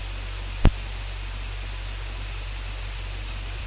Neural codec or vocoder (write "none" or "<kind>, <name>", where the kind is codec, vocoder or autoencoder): none